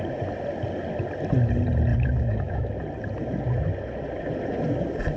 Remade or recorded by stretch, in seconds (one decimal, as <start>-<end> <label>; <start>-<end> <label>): 0.0-1.9 recorded; 1.9-2.7 remade; 2.7-5.2 recorded